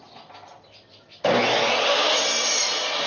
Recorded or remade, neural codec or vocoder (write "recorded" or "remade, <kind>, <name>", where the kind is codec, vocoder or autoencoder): recorded